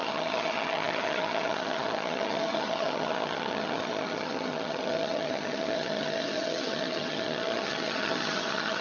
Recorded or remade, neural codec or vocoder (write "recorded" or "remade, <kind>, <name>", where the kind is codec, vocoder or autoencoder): remade, vocoder, HiFi-GAN